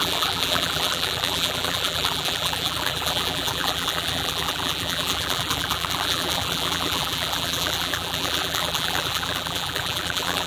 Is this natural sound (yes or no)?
no